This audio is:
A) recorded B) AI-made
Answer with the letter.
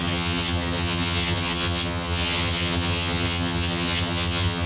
B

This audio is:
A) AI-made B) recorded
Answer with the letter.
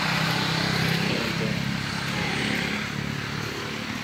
B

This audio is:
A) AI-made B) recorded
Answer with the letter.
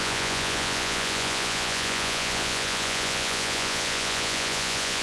A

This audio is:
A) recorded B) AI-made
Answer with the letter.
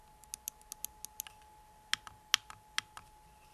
A